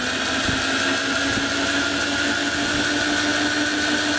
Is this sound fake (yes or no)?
no